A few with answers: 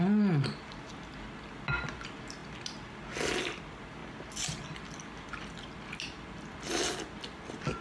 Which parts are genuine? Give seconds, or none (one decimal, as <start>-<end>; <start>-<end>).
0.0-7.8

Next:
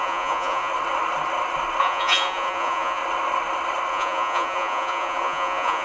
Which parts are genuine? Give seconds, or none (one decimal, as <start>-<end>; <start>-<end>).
0.7-1.8; 3.0-3.9

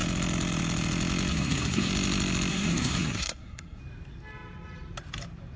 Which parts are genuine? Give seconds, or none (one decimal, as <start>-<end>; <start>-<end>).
0.0-1.3; 1.9-2.5; 3.8-5.6

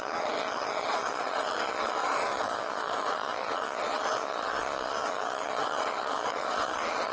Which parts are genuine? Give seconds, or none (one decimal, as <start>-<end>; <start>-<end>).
none

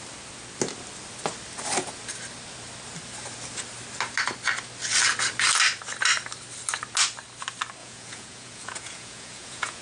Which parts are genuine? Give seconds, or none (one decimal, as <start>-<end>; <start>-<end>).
0.0-7.8